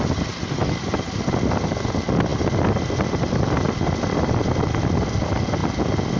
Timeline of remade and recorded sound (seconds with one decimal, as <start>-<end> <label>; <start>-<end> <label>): 0.0-6.2 recorded